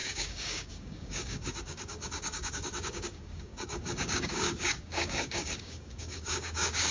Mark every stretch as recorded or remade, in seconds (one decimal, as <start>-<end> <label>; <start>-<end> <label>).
0.0-6.9 remade